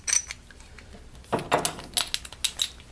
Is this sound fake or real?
real